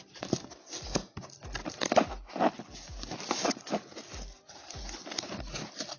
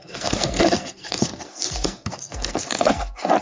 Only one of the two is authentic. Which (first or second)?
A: first